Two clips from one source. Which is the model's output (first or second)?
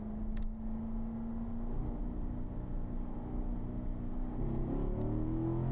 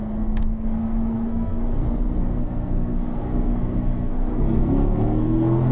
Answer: second